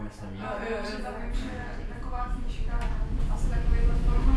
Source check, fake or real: real